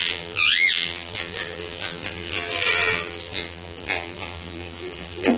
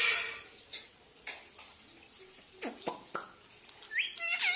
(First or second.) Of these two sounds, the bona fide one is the second